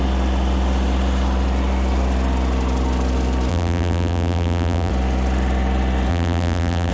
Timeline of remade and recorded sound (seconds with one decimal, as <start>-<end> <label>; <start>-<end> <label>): 0.0-3.5 recorded; 3.5-4.9 remade; 4.9-6.1 recorded; 6.1-6.9 remade